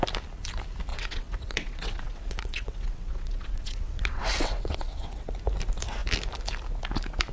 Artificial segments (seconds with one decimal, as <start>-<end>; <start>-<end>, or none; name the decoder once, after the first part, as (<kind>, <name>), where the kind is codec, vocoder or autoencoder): 0.9-5.3 (vocoder, WaveNeXt)